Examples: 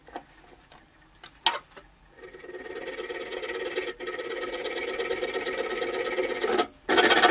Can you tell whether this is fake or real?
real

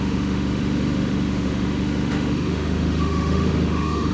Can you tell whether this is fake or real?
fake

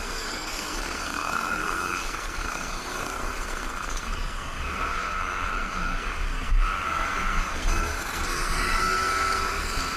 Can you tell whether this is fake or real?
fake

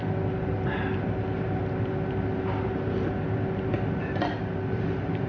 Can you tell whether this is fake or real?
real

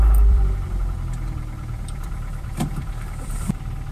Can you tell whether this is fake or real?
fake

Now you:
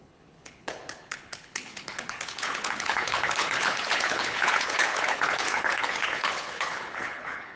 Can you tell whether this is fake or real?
fake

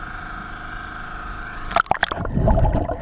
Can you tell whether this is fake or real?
real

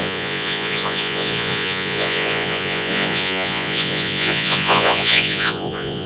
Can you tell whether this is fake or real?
fake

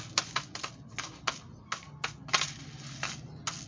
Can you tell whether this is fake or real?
real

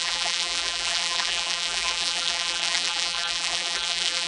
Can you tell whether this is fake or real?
fake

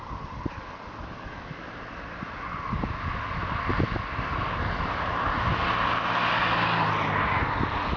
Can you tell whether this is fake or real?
real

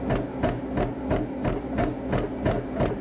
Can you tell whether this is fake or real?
real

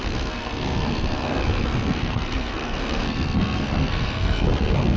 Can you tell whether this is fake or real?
fake